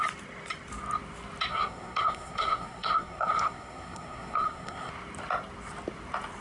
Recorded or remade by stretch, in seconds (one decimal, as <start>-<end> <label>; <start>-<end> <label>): 0.0-1.5 recorded; 1.5-4.9 remade; 4.9-6.4 recorded